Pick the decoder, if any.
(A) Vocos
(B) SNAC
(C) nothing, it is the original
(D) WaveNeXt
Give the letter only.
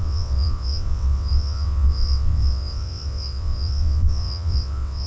D